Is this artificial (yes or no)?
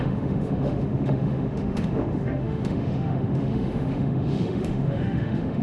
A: yes